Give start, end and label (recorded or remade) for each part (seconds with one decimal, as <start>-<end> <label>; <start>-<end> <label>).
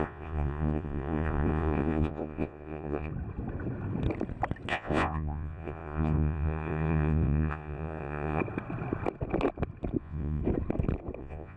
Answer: 0.0-3.1 remade; 3.1-4.7 recorded; 4.7-8.4 remade; 8.4-10.0 recorded; 10.0-10.4 remade; 10.4-11.2 recorded; 11.2-11.6 remade